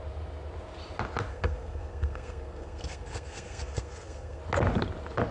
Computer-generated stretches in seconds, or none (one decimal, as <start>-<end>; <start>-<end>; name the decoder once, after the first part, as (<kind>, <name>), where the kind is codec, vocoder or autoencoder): 1.3-4.4 (codec, SNAC)